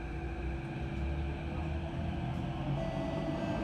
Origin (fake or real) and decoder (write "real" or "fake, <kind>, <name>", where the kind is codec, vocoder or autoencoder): real